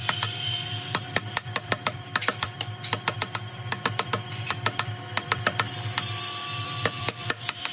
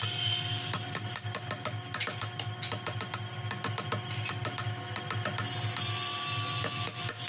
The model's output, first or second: first